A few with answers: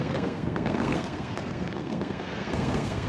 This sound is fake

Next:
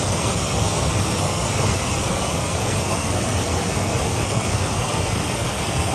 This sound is fake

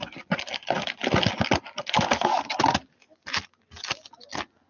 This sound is real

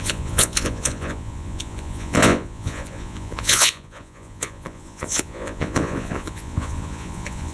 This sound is fake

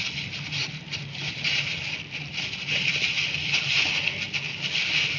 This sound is real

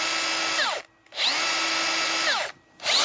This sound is real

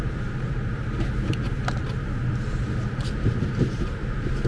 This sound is fake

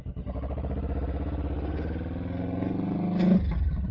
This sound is real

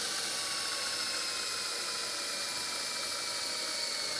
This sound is real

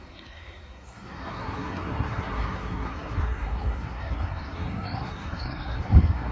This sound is fake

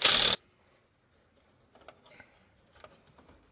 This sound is real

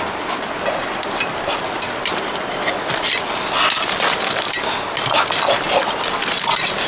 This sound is real